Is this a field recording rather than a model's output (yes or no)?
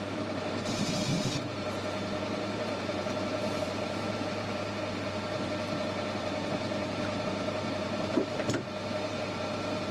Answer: no